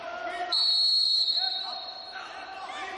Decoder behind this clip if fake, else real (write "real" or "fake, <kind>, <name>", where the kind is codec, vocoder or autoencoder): fake, vocoder, BigVGAN v2